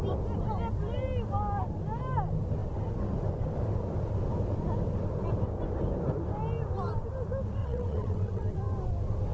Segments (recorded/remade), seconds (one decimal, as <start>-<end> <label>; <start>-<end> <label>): 0.0-7.6 recorded; 7.6-8.6 remade; 8.6-9.3 recorded